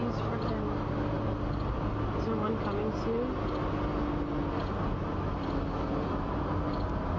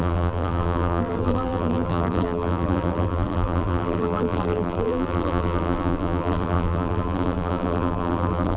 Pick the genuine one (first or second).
first